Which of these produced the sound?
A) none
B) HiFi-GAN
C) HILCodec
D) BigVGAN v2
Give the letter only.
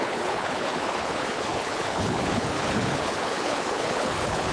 C